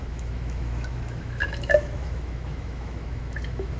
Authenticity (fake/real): fake